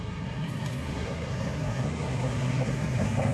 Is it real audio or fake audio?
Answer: fake